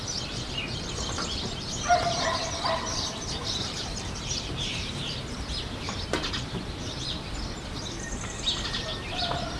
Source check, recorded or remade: remade